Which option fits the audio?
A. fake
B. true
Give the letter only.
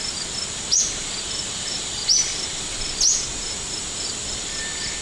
B